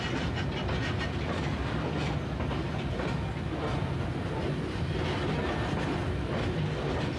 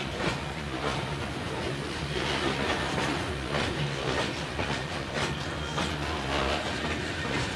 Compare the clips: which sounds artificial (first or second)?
second